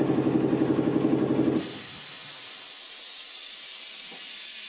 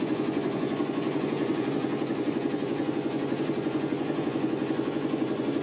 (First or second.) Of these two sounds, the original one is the first